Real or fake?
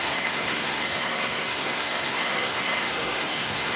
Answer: fake